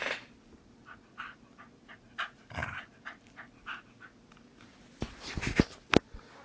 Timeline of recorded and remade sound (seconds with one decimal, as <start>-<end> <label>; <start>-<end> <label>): 0.0-6.4 recorded